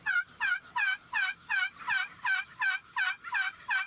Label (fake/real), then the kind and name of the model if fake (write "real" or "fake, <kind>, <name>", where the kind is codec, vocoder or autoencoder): real